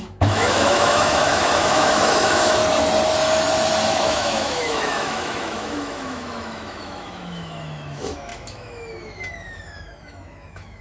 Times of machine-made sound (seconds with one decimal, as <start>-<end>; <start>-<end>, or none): 0.0-2.6; 3.9-10.8